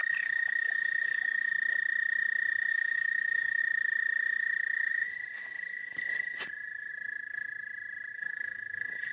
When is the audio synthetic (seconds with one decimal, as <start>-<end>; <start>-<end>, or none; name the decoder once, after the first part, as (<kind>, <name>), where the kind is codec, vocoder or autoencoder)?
0.0-1.5 (codec, DAC); 2.7-3.6; 4.9-6.9; 8.1-9.1

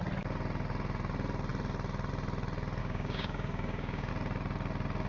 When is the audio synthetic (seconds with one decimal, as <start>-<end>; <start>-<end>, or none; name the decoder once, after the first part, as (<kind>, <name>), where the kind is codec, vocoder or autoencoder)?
2.8-4.1 (codec, DAC)

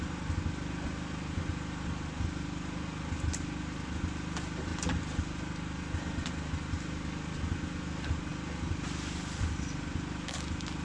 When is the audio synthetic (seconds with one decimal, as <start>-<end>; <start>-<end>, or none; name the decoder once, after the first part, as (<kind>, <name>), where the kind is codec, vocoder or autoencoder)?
none

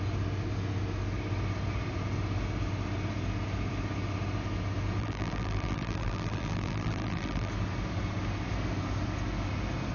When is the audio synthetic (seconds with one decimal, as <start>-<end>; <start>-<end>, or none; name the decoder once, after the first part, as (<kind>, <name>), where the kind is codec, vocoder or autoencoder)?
5.0-7.5 (vocoder, BigVGAN v2)

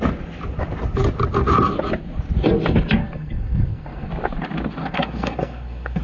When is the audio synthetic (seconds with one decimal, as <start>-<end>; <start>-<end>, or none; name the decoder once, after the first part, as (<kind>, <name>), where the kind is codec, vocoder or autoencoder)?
3.0-4.1 (codec, SNAC); 4.8-6.0

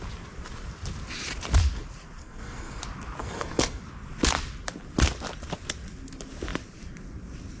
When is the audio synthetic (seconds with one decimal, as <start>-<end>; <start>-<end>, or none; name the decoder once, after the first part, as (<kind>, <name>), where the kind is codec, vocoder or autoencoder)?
2.2-2.8 (codec, SNAC); 3.2-3.8

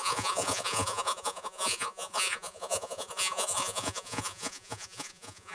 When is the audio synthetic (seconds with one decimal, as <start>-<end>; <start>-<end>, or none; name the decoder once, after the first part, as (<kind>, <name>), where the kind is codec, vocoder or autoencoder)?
0.0-5.5 (vocoder, Vocos)

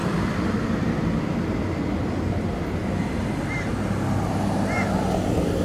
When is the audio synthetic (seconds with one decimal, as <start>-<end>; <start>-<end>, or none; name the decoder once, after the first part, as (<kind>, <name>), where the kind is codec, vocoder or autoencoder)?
0.0-1.2 (vocoder, BigVGAN v2)